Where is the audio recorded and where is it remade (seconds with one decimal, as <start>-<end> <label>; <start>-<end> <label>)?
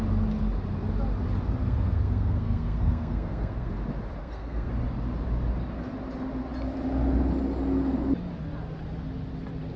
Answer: 0.0-1.6 recorded; 1.6-3.7 remade; 3.7-4.2 recorded; 4.2-4.7 remade; 4.7-9.8 recorded